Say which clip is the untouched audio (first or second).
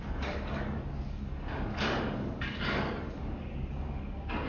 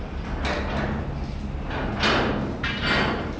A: second